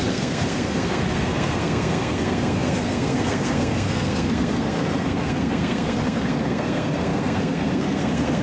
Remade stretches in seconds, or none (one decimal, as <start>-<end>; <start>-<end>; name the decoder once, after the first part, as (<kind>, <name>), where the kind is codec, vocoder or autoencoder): 0.0-8.4 (codec, SNAC)